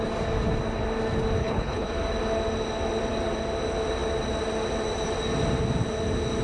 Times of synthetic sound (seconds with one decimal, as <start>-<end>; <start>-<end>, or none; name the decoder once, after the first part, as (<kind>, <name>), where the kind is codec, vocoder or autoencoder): 1.4-1.9 (codec, HILCodec)